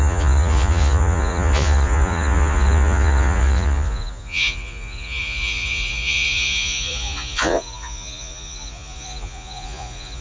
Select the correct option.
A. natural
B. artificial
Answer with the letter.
B